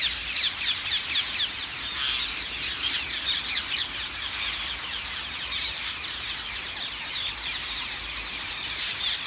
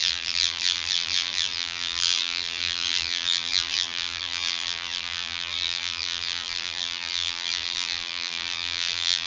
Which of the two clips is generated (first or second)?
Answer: second